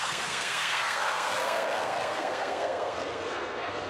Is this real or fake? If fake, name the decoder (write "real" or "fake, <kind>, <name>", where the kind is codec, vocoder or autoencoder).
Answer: fake, codec, SNAC